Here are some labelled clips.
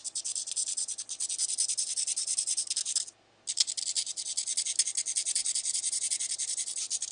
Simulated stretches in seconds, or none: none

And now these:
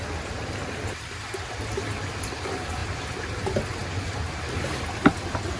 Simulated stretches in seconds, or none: none

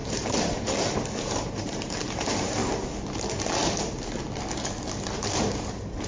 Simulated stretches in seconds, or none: 0.0-2.6 (vocoder, BigVGAN v2); 4.9-6.1